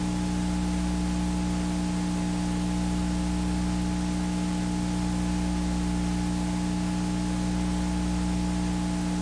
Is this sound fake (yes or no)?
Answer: no